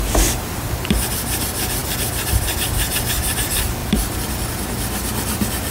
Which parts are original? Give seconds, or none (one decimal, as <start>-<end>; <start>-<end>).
0.0-5.7